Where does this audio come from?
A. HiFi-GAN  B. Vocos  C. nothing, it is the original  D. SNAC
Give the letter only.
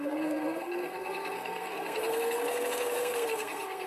D